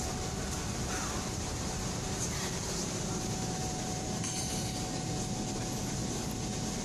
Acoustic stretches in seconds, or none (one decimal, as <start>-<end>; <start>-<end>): 0.0-1.0; 5.1-6.8